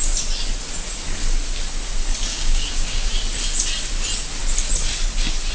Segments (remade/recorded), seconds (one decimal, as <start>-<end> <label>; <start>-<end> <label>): 0.0-2.3 recorded; 2.3-3.1 remade; 3.1-5.5 recorded